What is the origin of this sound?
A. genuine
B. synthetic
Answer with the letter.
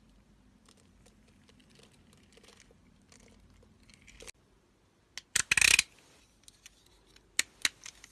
A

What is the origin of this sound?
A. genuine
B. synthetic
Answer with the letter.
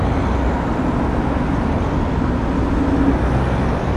A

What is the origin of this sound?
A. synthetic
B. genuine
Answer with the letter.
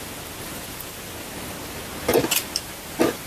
B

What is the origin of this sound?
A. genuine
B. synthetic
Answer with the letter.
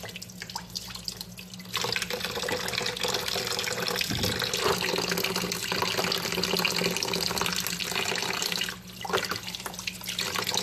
A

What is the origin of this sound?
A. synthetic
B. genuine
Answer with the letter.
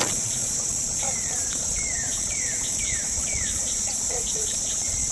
A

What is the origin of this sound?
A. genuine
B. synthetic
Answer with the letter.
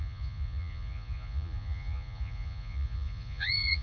B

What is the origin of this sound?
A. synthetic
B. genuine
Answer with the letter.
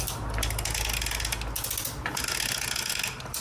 B